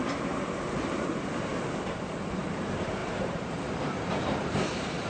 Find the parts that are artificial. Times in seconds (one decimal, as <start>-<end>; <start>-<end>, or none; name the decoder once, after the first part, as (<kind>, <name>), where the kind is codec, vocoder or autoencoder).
1.5-2.4 (vocoder, BigVGAN v2); 3.0-5.1